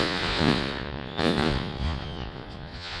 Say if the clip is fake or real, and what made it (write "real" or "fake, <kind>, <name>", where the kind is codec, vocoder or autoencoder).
fake, vocoder, Vocos